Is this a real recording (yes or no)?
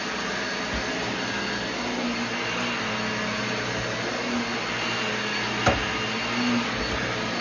yes